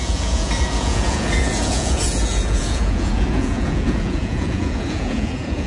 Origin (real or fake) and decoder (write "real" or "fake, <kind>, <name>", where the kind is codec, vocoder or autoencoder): fake, vocoder, Vocos